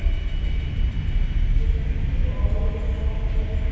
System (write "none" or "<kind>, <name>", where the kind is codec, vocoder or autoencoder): none